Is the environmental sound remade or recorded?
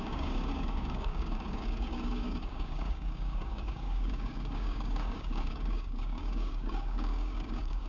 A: remade